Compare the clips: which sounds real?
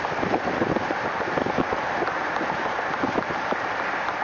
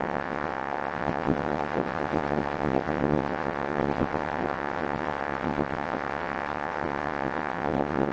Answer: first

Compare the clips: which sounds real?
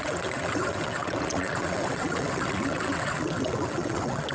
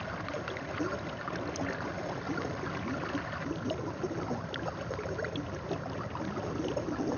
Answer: second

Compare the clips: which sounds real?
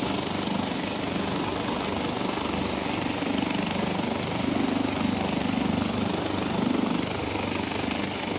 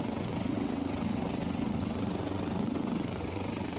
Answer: first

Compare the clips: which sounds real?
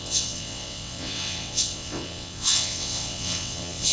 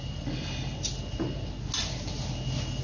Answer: second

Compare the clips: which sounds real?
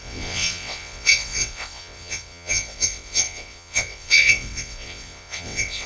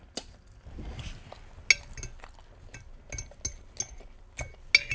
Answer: second